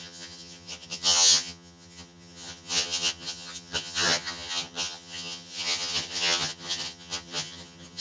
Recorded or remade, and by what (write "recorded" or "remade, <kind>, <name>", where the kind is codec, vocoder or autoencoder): remade, vocoder, HiFi-GAN